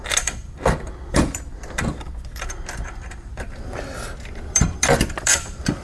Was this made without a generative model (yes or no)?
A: no